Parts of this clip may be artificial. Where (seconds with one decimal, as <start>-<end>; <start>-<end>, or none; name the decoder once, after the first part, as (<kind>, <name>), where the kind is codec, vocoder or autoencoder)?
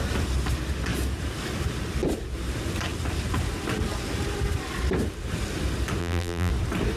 6.0-6.5 (vocoder, BigVGAN v2)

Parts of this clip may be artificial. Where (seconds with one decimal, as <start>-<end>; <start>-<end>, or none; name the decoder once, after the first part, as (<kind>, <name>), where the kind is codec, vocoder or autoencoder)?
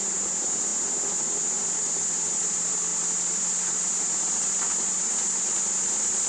none